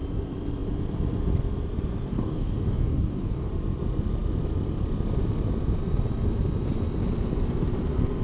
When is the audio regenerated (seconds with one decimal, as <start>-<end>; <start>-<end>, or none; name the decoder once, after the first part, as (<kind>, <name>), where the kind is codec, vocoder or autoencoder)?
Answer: 2.1-3.5 (codec, DAC)